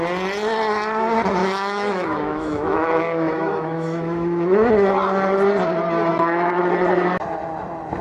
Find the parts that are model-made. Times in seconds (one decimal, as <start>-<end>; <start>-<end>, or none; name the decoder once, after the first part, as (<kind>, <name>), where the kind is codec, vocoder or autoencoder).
1.4-4.7 (autoencoder, DAC-VAE); 6.1-6.6